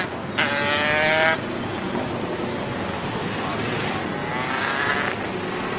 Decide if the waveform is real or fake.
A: real